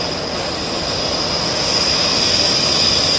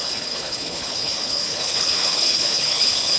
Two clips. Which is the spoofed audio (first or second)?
second